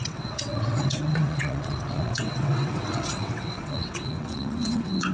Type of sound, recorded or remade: remade